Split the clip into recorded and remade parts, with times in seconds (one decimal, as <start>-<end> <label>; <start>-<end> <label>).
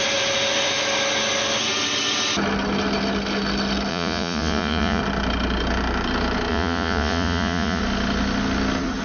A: 0.0-3.9 recorded; 3.9-5.0 remade; 5.0-6.5 recorded; 6.5-7.8 remade; 7.8-9.0 recorded